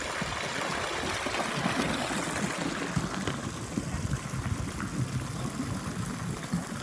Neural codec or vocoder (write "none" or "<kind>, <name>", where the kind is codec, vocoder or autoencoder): none